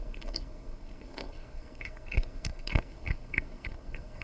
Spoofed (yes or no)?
yes